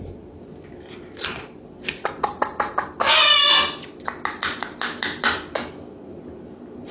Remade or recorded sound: recorded